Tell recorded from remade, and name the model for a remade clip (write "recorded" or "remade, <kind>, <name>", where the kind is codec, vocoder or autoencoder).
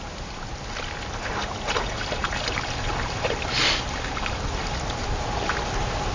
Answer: recorded